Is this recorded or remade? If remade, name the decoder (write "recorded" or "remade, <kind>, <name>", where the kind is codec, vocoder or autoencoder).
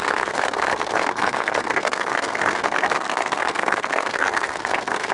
remade, codec, SNAC